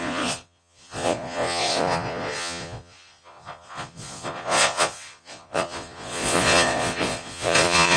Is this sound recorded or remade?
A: remade